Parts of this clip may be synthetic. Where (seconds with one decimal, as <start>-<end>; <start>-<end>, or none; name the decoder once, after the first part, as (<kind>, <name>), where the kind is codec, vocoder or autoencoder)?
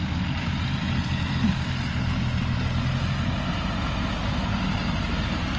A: none